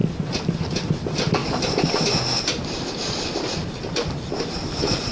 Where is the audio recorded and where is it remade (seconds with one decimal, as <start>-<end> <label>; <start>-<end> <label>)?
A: 0.0-0.6 recorded; 0.6-1.4 remade; 1.4-4.3 recorded; 4.3-5.1 remade